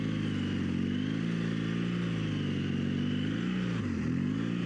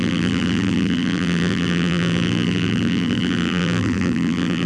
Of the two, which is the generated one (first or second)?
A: second